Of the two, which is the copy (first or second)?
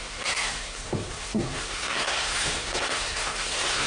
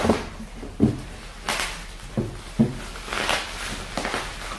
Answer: first